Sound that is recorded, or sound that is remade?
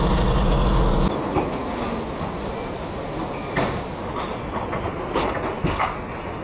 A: recorded